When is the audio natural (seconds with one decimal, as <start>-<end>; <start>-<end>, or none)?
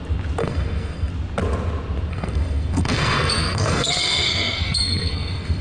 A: 0.0-0.4; 1.1-2.1